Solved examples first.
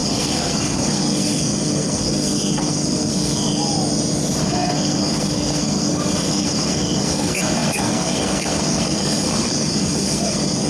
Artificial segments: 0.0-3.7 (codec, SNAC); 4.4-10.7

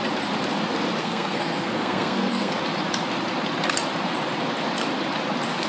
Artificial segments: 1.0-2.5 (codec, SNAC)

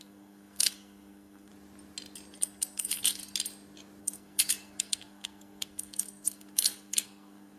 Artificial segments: 0.0-1.5 (codec, SNAC); 2.4-3.2; 4.0-7.6

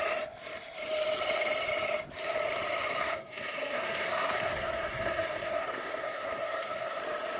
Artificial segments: 3.0-7.0 (codec, SNAC)

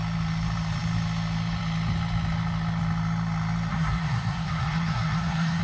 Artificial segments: 3.7-5.6 (codec, SNAC)

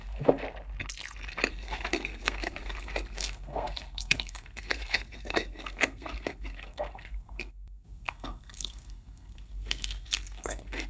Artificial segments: 0.0-0.4 (codec, SNAC); 1.5-10.9